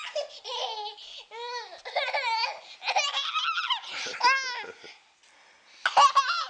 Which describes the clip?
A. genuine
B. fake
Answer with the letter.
A